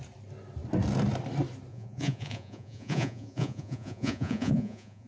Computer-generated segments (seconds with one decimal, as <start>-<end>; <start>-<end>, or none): 1.7-5.1